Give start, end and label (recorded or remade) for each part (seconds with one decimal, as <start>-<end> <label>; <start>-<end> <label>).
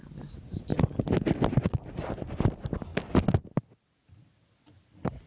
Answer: 0.0-5.3 recorded